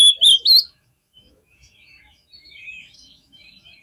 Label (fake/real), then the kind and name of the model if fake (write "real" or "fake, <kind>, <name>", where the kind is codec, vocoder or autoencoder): fake, autoencoder, DAC-VAE